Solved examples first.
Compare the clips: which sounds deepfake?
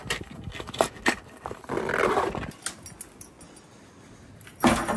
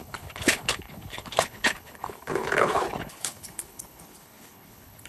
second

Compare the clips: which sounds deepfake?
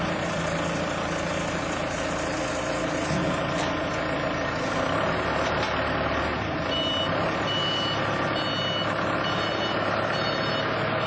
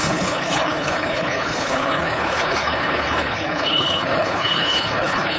second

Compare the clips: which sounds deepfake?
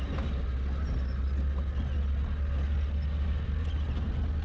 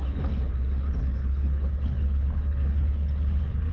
second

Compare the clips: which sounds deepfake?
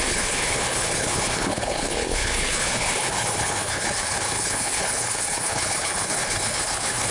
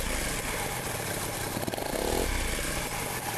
first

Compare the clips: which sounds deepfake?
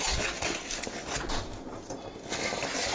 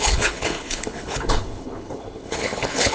second